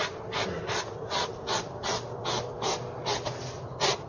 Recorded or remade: recorded